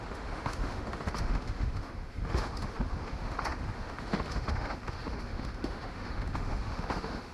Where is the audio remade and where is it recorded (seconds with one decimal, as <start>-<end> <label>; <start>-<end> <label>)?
0.0-7.3 remade